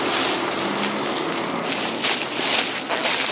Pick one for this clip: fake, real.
real